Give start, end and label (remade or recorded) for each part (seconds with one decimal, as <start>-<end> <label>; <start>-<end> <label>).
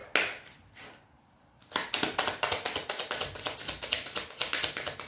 0.0-5.1 recorded